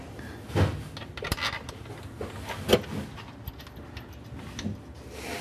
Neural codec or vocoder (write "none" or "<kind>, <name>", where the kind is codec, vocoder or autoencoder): none